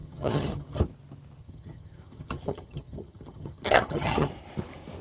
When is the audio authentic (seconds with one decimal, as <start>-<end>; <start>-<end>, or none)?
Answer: 0.8-1.4; 4.3-5.0